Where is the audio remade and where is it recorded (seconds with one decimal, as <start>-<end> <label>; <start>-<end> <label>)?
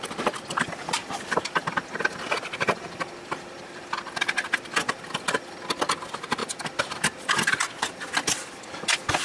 0.0-9.2 recorded